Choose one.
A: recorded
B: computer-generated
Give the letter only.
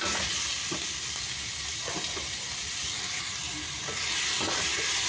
B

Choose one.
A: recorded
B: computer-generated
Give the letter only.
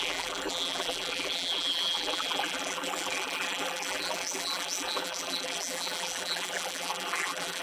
B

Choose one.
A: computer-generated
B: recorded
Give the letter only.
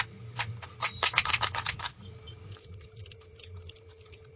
A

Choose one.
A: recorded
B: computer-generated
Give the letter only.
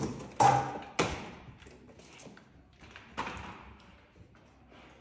A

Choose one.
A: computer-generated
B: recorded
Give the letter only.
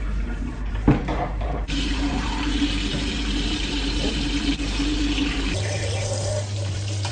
A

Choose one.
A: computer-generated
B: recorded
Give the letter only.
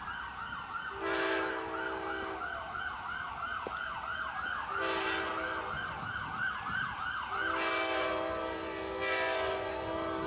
B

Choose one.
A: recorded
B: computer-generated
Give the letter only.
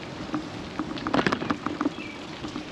B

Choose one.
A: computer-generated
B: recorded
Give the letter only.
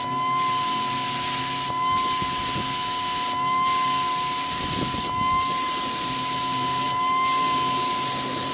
B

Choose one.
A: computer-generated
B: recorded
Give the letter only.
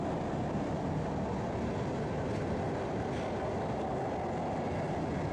B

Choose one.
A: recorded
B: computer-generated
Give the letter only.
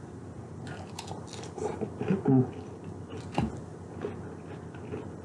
A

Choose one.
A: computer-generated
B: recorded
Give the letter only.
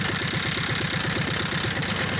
A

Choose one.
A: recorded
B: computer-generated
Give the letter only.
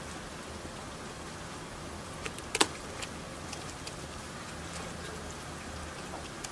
A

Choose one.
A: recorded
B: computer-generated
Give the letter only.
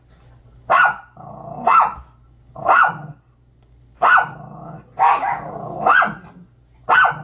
A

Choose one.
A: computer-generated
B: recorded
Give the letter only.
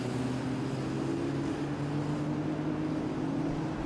B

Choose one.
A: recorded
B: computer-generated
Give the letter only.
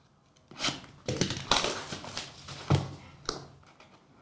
B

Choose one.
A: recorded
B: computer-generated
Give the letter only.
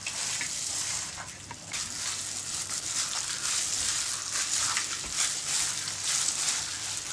A